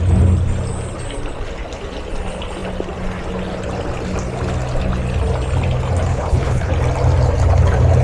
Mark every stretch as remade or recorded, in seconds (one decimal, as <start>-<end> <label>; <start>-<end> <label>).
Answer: 0.0-6.1 recorded; 6.1-6.7 remade; 6.7-8.0 recorded

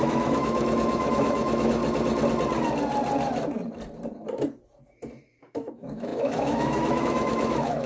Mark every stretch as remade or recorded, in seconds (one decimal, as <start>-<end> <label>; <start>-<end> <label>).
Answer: 0.0-1.8 remade; 1.8-5.4 recorded; 5.4-7.9 remade

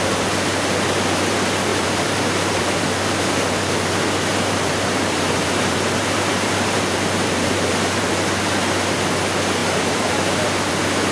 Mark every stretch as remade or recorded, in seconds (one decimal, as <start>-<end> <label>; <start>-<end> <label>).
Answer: 0.0-1.7 recorded; 1.7-2.8 remade; 2.8-4.3 recorded; 4.3-8.1 remade; 8.1-9.6 recorded; 9.6-10.7 remade; 10.7-11.1 recorded

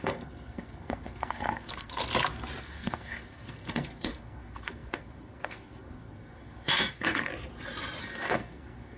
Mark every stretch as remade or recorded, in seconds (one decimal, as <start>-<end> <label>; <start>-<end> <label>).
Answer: 0.0-2.0 remade; 2.0-2.6 recorded; 2.6-7.3 remade; 7.3-8.0 recorded; 8.0-9.0 remade

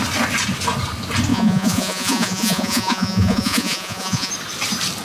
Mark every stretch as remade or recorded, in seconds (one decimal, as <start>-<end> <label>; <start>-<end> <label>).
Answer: 0.0-1.3 recorded; 1.3-4.3 remade; 4.3-5.0 recorded